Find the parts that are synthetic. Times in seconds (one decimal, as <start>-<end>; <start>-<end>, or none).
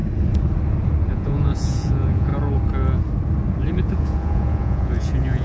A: 1.1-2.3; 3.6-5.4